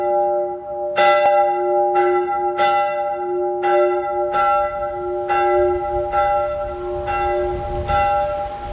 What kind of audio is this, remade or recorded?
recorded